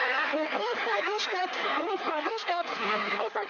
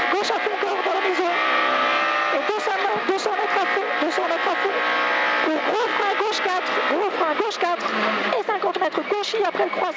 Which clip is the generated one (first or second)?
first